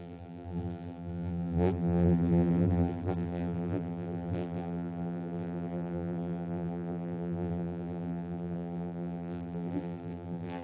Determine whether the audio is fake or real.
fake